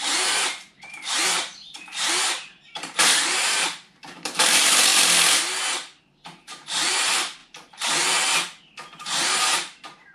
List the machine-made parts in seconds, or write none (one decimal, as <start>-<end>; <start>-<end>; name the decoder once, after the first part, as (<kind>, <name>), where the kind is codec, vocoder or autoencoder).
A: 0.0-4.9 (vocoder, BigVGAN v2); 6.0-7.4; 9.4-10.1